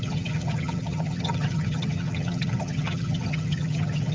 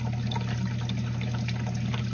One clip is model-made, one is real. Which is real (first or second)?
second